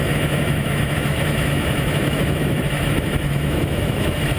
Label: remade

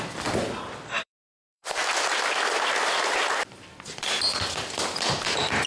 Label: remade